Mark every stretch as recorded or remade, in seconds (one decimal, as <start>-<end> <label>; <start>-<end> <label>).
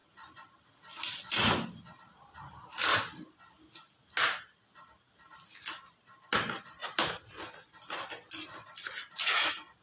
0.0-9.8 recorded